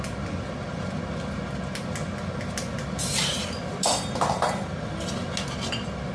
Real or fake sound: real